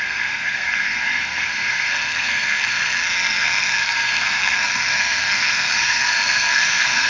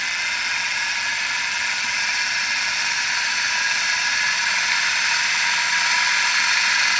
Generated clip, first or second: first